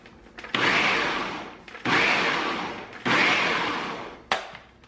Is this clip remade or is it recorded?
recorded